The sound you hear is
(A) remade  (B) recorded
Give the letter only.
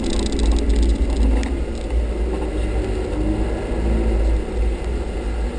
B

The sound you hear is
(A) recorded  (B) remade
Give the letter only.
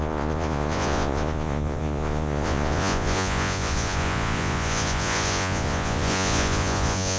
B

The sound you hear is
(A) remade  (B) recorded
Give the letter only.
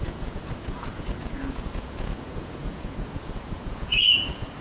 A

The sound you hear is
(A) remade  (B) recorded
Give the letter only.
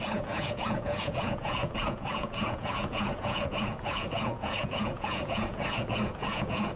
A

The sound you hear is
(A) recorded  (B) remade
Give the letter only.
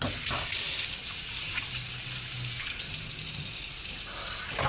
A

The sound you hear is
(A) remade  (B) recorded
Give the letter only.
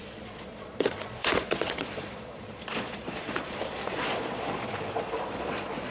A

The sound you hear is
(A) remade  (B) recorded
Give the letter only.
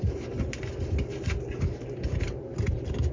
B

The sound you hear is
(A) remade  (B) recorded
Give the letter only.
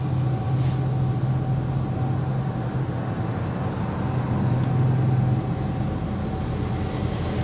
B